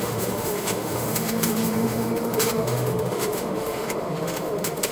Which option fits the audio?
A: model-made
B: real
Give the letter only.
A